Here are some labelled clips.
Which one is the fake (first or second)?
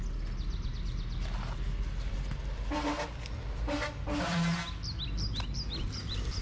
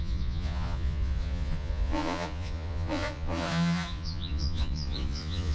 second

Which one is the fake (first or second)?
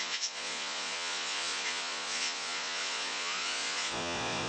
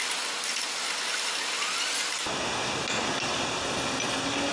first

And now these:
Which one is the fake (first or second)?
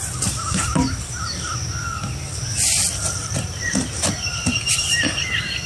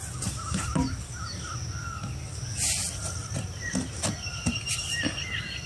first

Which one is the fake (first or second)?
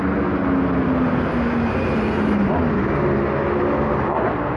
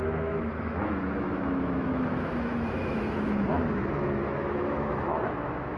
second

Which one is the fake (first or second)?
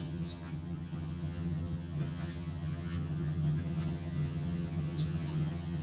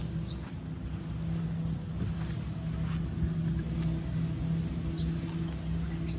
first